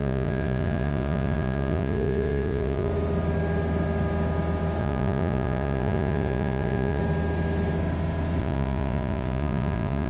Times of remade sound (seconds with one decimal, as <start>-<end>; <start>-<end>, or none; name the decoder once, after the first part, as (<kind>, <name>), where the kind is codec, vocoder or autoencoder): 0.0-2.9 (vocoder, Vocos); 4.8-7.0; 8.4-10.1